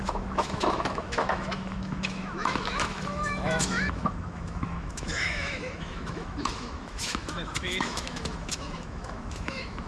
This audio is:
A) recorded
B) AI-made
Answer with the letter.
B